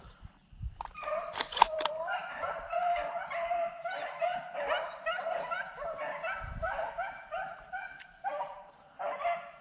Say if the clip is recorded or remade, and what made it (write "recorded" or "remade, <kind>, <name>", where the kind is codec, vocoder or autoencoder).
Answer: remade, vocoder, BigVGAN v2